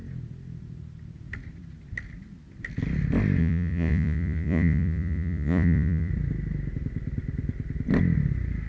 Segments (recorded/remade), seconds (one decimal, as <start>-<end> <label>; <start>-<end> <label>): 0.0-3.4 recorded; 3.4-6.1 remade; 6.1-8.7 recorded